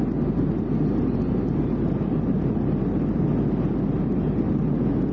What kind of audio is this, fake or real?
real